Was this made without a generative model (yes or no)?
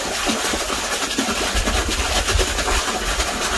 yes